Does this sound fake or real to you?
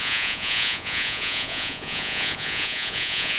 fake